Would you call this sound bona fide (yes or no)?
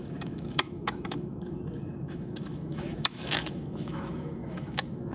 no